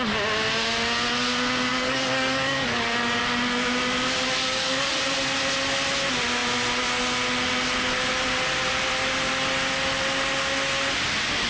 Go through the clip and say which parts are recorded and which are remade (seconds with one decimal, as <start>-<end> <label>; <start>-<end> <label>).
0.0-1.7 recorded; 1.7-3.2 remade; 3.2-4.4 recorded; 4.4-5.0 remade; 5.0-11.5 recorded